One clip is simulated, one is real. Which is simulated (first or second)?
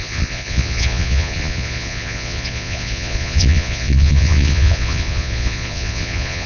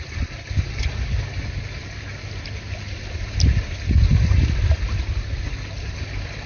first